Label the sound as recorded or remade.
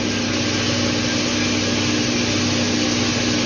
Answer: recorded